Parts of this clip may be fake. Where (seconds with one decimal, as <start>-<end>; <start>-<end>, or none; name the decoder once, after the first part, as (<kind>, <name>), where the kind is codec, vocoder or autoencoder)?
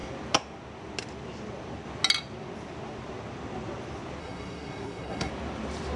4.2-5.3 (codec, SNAC)